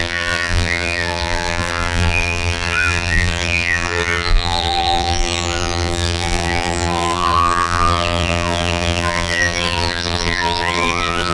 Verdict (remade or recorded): remade